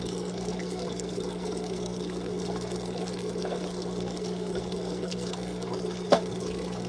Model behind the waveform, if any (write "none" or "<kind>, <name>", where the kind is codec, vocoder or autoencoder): codec, SNAC